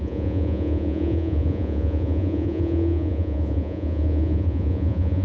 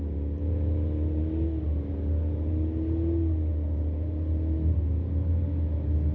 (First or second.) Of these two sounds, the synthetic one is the first